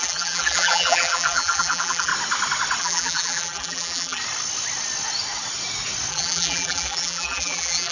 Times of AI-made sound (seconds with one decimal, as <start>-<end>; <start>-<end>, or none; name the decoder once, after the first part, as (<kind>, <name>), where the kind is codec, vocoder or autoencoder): 0.0-2.1 (vocoder, BigVGAN v2); 2.8-4.2; 6.1-7.9